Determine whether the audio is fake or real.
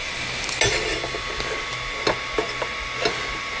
real